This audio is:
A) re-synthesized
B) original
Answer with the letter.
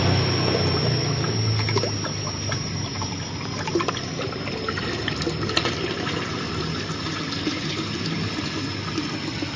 B